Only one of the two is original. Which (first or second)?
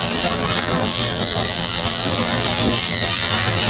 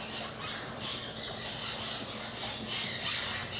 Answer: second